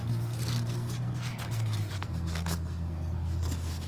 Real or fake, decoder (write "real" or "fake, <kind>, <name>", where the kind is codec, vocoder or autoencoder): fake, codec, SNAC